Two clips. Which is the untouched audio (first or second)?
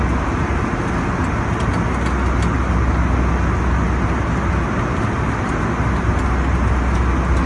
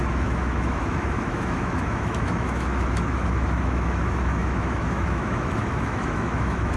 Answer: first